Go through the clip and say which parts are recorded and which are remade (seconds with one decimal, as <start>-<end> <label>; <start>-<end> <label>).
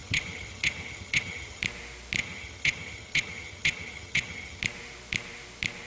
0.0-1.6 remade; 1.6-2.2 recorded; 2.2-4.6 remade; 4.6-5.9 recorded